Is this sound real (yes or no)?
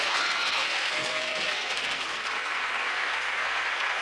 no